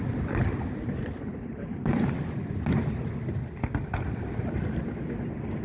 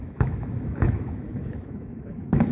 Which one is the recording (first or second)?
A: first